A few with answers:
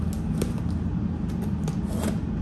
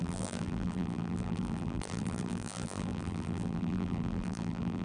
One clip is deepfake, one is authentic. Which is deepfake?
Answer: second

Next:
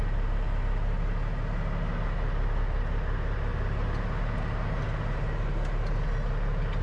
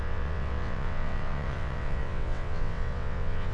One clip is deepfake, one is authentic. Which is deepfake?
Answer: second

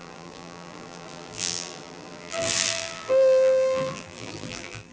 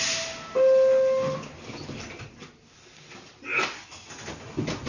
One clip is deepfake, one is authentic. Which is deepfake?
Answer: first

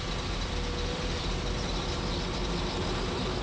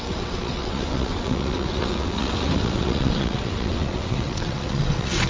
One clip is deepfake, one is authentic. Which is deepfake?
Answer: second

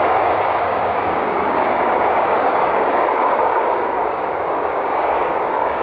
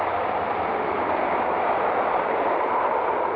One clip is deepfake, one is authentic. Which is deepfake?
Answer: first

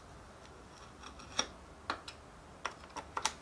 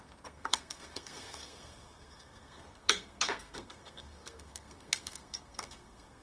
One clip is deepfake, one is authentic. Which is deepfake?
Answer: second